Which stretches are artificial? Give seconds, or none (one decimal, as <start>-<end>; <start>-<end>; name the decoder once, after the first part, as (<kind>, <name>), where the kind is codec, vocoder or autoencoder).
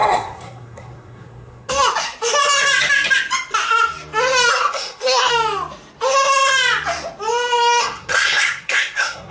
0.0-1.7 (codec, SNAC); 4.5-5.3; 7.8-9.3